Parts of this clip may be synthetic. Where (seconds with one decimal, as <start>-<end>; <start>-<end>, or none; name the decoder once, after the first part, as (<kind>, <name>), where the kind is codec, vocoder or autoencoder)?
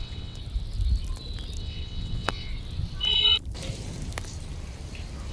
0.0-0.4 (vocoder, WaveNeXt); 1.6-2.5